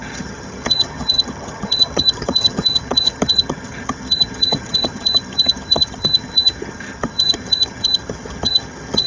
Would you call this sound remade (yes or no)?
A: yes